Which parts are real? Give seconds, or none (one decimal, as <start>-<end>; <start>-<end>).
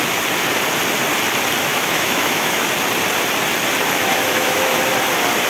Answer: 0.0-1.7; 2.7-4.0; 4.8-5.5